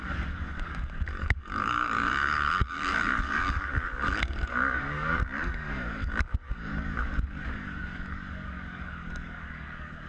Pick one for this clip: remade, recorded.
remade